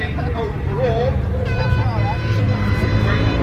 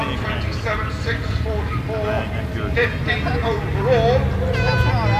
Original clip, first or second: second